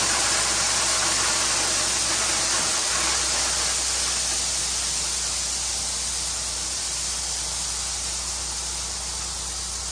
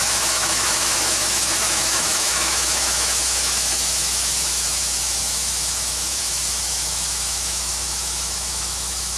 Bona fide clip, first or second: first